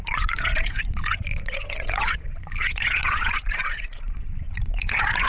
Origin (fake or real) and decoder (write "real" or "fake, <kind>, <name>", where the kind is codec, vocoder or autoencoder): fake, vocoder, Vocos